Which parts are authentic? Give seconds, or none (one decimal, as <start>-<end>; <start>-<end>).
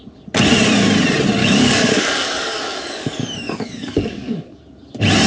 0.0-1.4; 4.6-5.3